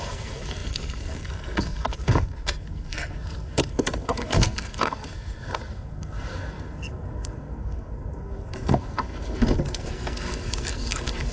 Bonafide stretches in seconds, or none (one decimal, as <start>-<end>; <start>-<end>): none

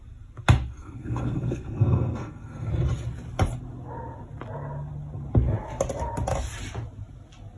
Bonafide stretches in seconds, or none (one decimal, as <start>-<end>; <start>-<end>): 0.0-0.8; 2.7-7.6